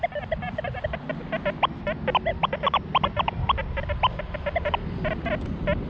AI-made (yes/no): no